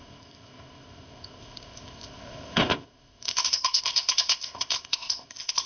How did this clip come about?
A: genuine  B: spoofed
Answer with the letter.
B